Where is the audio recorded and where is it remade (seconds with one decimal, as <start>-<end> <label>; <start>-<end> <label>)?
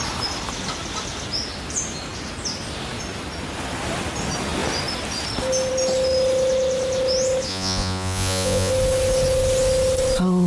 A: 0.0-7.5 recorded; 7.5-8.7 remade; 8.7-10.5 recorded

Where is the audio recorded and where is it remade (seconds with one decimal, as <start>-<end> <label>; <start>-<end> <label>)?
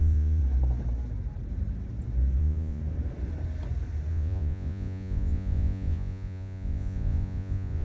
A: 0.0-0.4 remade; 0.4-2.4 recorded; 2.4-2.8 remade; 2.8-4.1 recorded; 4.1-7.8 remade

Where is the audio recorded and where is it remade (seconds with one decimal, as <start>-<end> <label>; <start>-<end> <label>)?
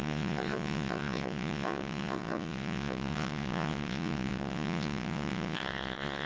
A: 0.0-6.3 remade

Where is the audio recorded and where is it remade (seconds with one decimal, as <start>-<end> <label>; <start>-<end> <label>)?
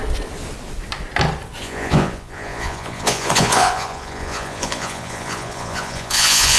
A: 0.0-1.6 recorded; 1.6-6.6 remade